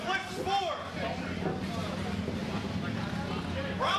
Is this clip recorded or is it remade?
recorded